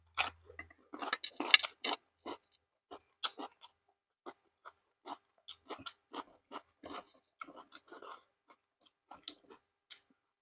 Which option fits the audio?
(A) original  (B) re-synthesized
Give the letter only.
A